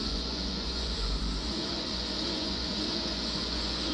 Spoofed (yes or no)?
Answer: yes